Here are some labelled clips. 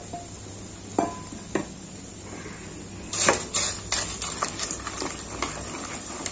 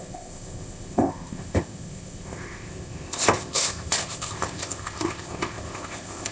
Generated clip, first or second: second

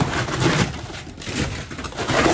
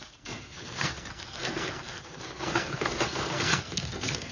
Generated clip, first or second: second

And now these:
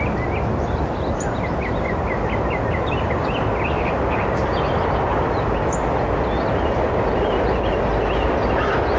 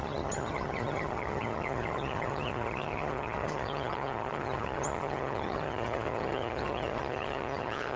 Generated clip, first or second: second